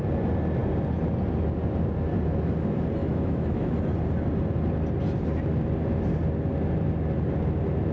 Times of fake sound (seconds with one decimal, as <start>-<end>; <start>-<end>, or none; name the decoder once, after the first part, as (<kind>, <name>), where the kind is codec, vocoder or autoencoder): 3.0-3.7 (autoencoder, DAC-VAE)